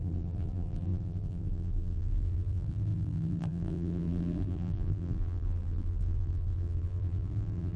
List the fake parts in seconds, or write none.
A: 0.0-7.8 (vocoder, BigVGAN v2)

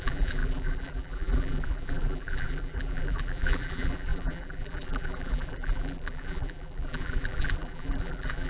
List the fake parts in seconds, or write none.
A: 0.0-8.5 (vocoder, BigVGAN v2)

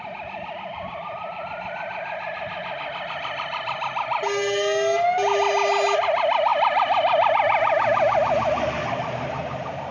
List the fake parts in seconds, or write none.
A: 6.5-7.3 (vocoder, BigVGAN v2)

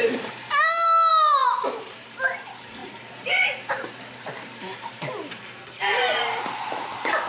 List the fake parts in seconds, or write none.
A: 0.0-7.3 (vocoder, BigVGAN v2)

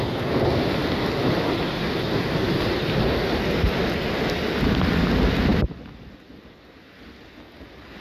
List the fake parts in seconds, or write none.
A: 1.8-4.4 (vocoder, BigVGAN v2)

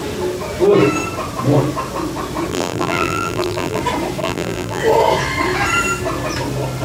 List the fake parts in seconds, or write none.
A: 2.5-3.8 (vocoder, BigVGAN v2); 4.2-4.8